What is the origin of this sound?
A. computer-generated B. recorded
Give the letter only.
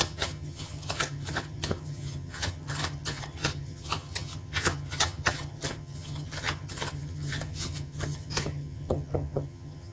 A